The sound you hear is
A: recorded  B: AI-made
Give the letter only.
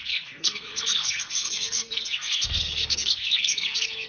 B